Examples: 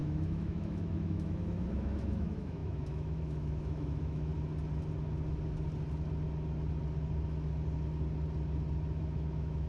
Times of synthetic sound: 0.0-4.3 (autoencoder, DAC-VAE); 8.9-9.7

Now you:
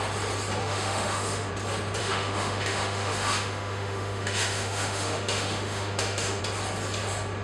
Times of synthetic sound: 0.6-1.5 (autoencoder, DAC-VAE); 2.0-6.4